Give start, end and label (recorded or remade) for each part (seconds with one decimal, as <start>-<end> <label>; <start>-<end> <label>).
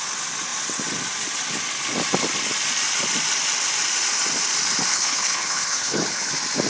0.0-4.9 recorded; 4.9-6.3 remade; 6.3-6.7 recorded